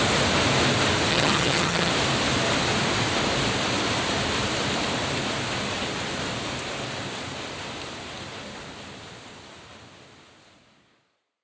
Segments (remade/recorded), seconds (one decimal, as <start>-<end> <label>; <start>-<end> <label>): 0.0-1.1 recorded; 1.1-1.9 remade; 1.9-11.4 recorded